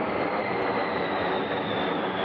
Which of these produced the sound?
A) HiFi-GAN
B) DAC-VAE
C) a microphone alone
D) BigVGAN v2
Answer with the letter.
D